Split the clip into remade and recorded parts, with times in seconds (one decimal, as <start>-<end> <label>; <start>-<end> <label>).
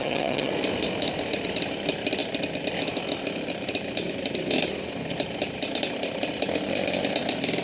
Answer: 0.0-0.5 remade; 0.5-7.6 recorded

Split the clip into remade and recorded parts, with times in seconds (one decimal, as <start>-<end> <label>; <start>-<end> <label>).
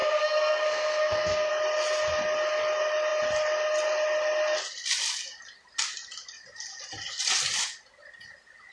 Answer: 0.0-1.5 remade; 1.5-8.7 recorded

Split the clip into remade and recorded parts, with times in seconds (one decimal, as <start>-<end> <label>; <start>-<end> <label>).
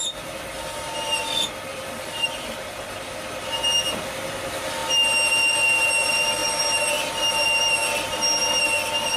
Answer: 0.0-1.7 recorded; 1.7-3.1 remade; 3.1-6.4 recorded; 6.4-7.1 remade; 7.1-7.8 recorded; 7.8-8.4 remade; 8.4-9.2 recorded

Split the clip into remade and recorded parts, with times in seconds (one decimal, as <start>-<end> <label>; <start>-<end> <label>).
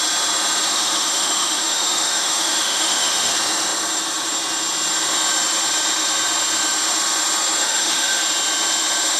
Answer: 0.0-0.7 recorded; 0.7-3.3 remade; 3.3-7.6 recorded; 7.6-8.2 remade; 8.2-9.2 recorded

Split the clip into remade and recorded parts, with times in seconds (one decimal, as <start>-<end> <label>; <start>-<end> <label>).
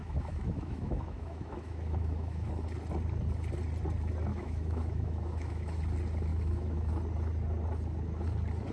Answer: 0.0-2.5 remade; 2.5-4.3 recorded; 4.3-5.8 remade; 5.8-6.3 recorded; 6.3-6.9 remade; 6.9-8.7 recorded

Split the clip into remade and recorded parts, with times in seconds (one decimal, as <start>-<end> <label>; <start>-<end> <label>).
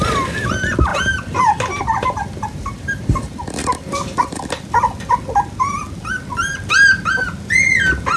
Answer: 0.0-0.9 recorded; 0.9-4.4 remade; 4.4-8.2 recorded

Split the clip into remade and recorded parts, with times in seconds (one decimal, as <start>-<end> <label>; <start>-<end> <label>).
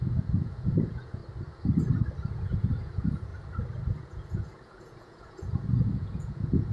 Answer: 0.0-1.2 remade; 1.2-2.3 recorded; 2.3-3.3 remade; 3.3-4.0 recorded; 4.0-6.7 remade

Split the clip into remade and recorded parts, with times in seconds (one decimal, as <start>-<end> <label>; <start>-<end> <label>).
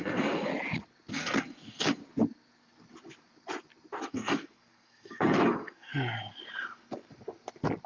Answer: 0.0-0.5 remade; 0.5-1.1 recorded; 1.1-2.0 remade; 2.0-4.1 recorded; 4.1-5.9 remade; 5.9-7.9 recorded